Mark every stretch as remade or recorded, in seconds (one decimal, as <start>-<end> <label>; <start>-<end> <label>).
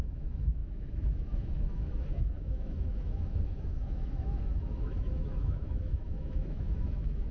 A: 0.0-7.3 remade